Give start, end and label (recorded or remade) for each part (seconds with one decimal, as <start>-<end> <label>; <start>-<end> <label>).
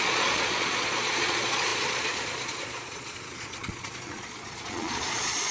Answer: 0.0-5.5 remade